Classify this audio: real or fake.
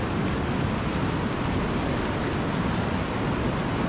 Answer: real